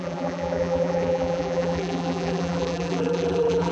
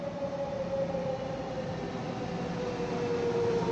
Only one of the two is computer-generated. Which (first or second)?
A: first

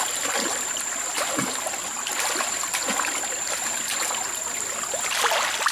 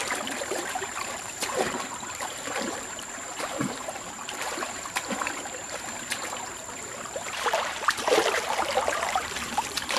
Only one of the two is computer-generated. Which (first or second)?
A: second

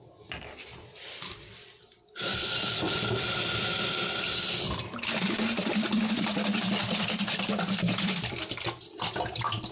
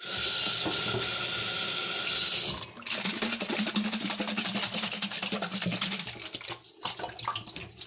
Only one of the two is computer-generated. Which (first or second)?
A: first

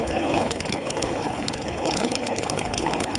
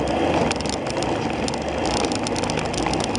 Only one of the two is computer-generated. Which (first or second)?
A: first